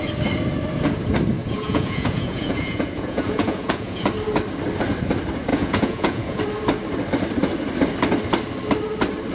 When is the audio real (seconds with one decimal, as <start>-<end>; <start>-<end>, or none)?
0.0-1.4; 4.0-5.5; 6.4-9.3